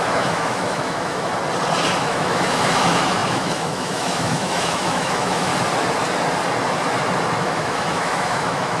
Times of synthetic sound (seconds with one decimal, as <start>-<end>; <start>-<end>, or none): 0.0-1.3; 2.0-5.5; 7.4-8.8